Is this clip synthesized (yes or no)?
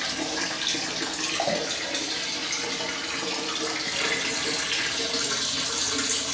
no